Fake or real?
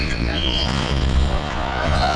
fake